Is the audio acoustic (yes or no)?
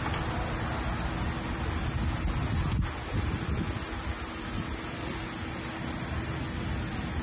yes